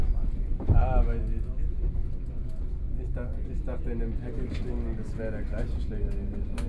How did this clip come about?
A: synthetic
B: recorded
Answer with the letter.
B